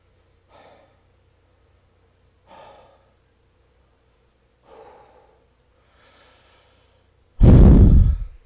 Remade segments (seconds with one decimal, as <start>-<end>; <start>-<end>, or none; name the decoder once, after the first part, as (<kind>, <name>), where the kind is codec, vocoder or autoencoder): none